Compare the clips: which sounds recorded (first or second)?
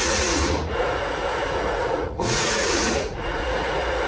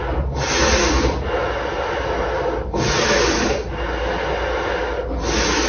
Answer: second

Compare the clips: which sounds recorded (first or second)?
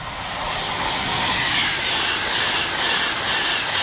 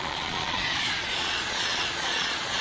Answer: first